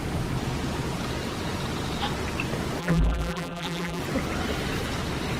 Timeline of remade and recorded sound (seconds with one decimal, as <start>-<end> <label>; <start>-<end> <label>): 0.0-2.8 recorded; 2.8-4.0 remade; 4.0-5.4 recorded